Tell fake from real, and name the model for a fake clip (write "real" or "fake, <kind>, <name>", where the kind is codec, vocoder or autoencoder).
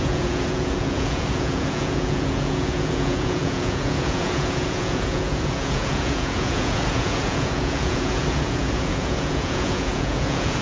fake, vocoder, Vocos